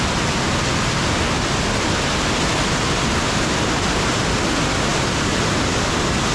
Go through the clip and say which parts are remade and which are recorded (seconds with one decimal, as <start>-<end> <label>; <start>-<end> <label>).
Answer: 0.0-6.3 recorded